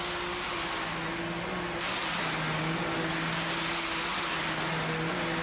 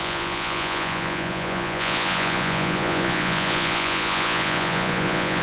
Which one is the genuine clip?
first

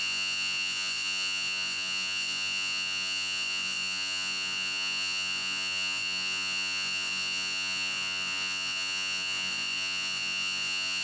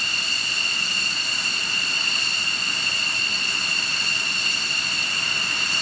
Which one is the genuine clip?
second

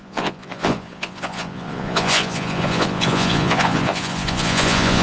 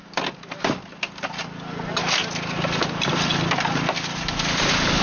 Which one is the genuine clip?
second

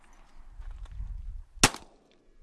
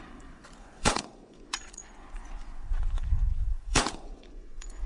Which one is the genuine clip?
first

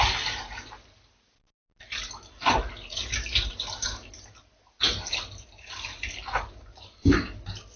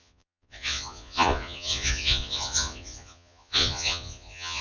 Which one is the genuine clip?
first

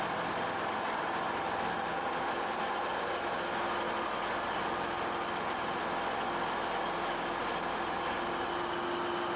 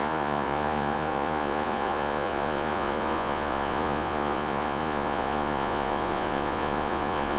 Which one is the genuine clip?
first